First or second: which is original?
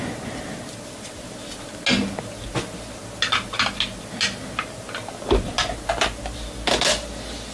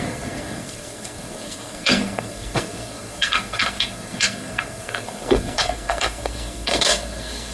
first